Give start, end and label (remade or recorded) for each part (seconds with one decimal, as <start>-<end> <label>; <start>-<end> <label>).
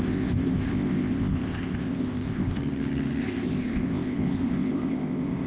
0.0-2.6 remade; 2.6-3.2 recorded; 3.2-5.5 remade